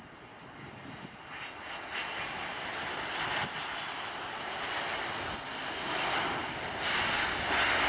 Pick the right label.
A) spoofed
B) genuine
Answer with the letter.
B